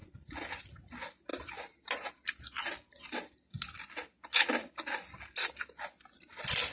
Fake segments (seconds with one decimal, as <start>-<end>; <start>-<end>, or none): 0.0-0.6; 1.3-2.1